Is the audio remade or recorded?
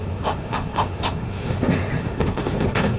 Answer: remade